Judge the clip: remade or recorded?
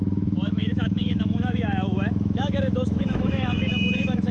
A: remade